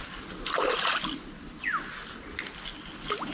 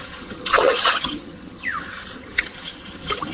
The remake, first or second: second